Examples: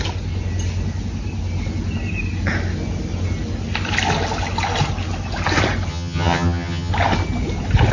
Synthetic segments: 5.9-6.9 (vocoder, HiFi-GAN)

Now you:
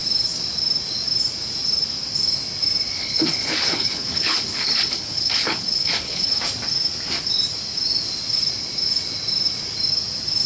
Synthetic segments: 3.0-6.4 (codec, HILCodec)

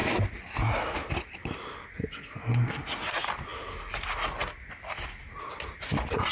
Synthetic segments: none

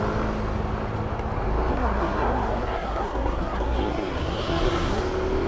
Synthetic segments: 1.7-5.0 (codec, SNAC)

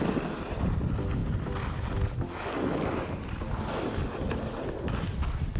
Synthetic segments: none

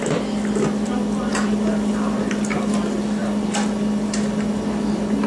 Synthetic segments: none